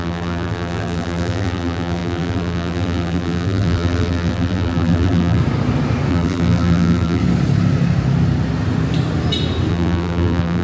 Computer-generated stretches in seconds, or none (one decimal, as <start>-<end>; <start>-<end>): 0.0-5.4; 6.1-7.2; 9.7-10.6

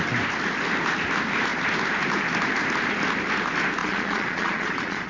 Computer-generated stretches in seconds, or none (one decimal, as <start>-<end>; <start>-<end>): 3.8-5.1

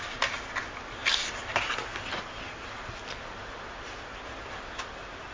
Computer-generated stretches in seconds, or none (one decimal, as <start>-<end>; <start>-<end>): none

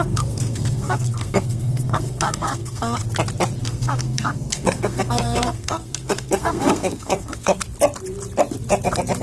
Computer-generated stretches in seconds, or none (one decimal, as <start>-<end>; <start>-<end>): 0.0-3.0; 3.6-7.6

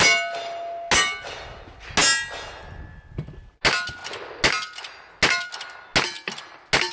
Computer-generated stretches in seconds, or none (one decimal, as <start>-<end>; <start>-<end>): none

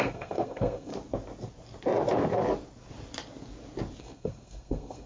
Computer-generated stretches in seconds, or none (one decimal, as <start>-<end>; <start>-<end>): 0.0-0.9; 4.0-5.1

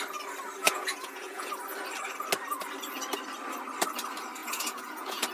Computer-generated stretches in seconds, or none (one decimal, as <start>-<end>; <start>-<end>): 0.6-1.5; 4.4-5.3